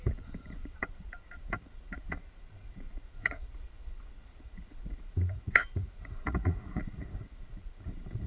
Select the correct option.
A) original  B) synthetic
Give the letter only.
B